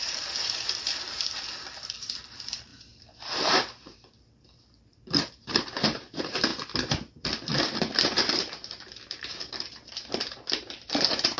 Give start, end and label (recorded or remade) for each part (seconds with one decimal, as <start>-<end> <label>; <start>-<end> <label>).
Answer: 0.0-6.5 remade; 6.5-7.8 recorded; 7.8-11.4 remade